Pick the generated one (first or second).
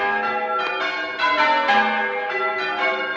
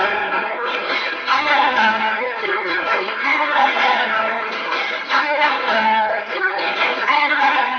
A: second